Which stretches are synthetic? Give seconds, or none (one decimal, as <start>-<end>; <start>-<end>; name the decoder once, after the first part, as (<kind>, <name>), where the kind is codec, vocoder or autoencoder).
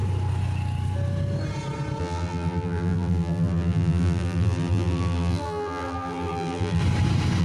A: 2.0-6.8 (vocoder, BigVGAN v2)